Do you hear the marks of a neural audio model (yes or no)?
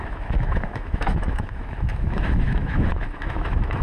yes